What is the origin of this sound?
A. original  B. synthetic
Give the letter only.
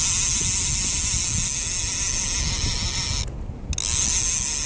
A